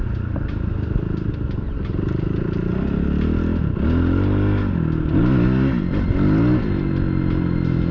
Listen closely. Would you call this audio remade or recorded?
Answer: recorded